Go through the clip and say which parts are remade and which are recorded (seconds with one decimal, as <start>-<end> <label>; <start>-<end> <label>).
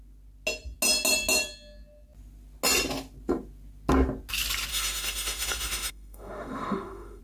0.0-4.7 recorded; 4.7-7.2 remade